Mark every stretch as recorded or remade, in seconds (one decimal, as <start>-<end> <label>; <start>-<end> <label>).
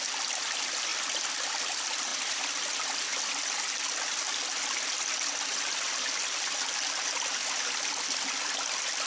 0.0-2.1 recorded; 2.1-2.7 remade; 2.7-7.4 recorded; 7.4-8.2 remade; 8.2-9.1 recorded